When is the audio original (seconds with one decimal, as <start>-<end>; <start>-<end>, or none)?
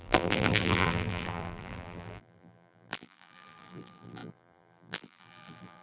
none